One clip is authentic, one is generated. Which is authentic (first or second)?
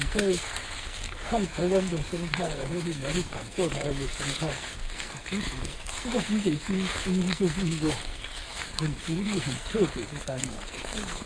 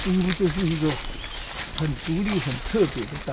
second